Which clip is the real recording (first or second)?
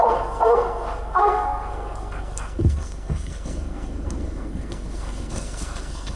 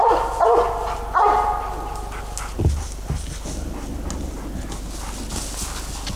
second